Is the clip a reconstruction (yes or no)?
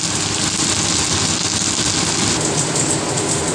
no